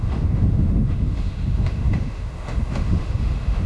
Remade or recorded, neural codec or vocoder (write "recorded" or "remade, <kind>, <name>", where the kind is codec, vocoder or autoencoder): remade, autoencoder, DAC-VAE